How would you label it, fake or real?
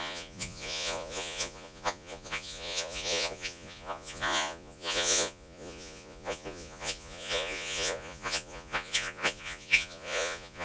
fake